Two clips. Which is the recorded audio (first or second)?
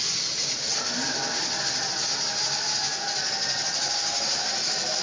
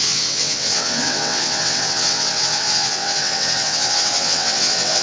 first